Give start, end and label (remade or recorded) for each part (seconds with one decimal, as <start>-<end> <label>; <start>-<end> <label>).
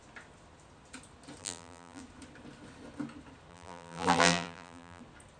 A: 0.0-1.4 recorded; 1.4-2.0 remade; 2.0-3.5 recorded; 3.5-5.0 remade; 5.0-5.4 recorded